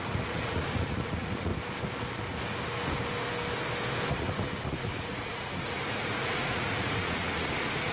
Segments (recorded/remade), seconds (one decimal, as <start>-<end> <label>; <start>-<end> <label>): 0.0-1.5 remade; 1.5-4.1 recorded; 4.1-7.9 remade